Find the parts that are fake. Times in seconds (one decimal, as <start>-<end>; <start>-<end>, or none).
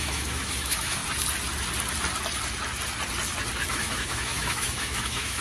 0.0-1.0; 3.7-5.4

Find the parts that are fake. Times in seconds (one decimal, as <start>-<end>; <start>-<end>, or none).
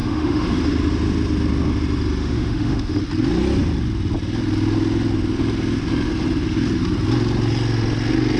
0.0-0.6; 2.2-3.0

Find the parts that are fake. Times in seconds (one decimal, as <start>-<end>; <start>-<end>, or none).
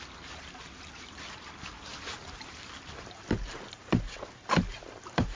none